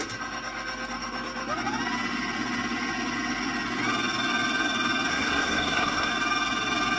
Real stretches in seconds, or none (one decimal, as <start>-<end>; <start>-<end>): 0.0-5.1; 6.1-7.0

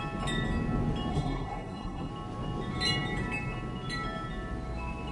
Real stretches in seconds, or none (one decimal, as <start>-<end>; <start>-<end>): 0.0-1.1; 2.1-5.1

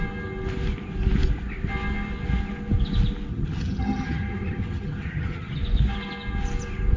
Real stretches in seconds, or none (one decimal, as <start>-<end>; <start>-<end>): 0.0-3.3; 5.6-7.0

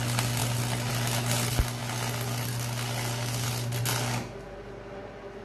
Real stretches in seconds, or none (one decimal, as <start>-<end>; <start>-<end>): 0.0-5.4

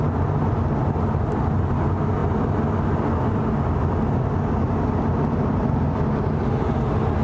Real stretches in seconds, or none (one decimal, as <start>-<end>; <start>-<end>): 0.0-7.2

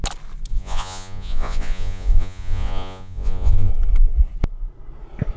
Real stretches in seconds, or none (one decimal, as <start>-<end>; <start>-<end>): 0.0-0.5; 3.7-5.4

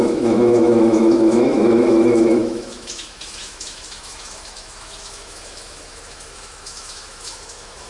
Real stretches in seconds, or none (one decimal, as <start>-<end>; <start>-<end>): none